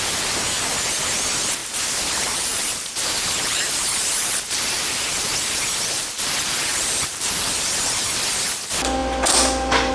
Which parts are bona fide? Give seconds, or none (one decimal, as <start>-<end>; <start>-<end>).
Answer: 0.0-1.6; 4.4-6.7; 8.1-9.9